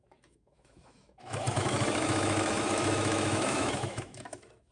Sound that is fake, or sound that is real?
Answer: fake